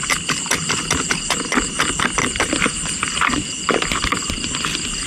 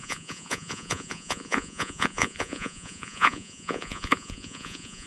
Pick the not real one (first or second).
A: second